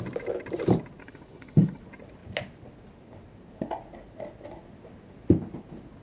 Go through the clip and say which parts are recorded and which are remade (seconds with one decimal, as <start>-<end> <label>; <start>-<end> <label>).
0.0-1.0 recorded; 1.0-1.8 remade; 1.8-6.0 recorded